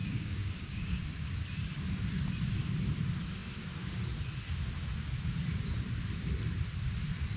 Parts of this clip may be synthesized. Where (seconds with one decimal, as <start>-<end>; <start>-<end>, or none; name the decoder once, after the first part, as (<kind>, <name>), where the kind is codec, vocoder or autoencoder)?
0.0-1.0 (codec, DAC)